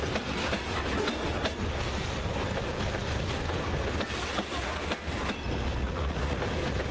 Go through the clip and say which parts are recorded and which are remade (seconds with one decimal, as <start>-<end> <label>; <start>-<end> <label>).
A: 0.0-5.8 recorded; 5.8-6.4 remade; 6.4-6.9 recorded